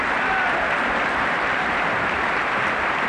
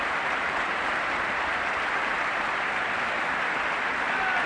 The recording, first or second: first